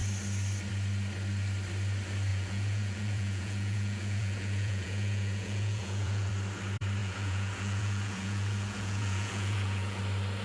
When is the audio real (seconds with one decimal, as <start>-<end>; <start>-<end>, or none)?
0.0-2.3; 6.3-7.0; 10.0-10.4